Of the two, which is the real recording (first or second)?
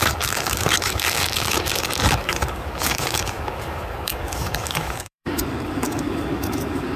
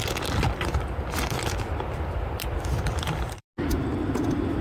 second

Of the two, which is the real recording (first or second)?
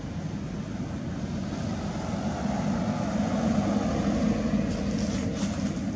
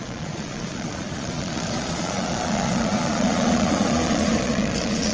first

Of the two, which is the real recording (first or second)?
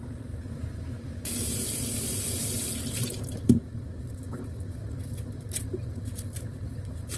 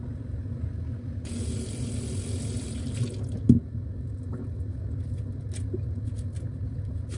second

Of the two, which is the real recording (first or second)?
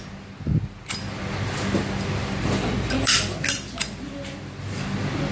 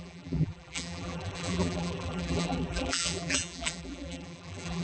first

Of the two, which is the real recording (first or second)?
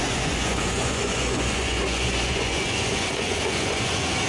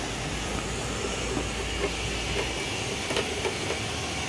second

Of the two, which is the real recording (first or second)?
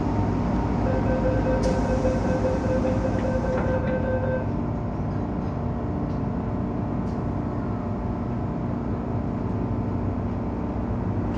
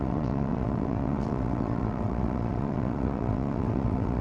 first